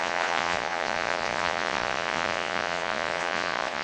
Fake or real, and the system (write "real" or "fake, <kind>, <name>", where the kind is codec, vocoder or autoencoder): fake, vocoder, Vocos